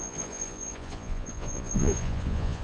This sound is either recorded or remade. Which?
remade